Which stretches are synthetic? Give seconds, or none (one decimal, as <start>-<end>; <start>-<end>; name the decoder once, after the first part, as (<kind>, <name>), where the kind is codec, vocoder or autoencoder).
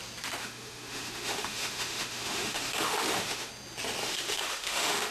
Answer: 0.4-3.5 (autoencoder, DAC-VAE); 4.0-5.1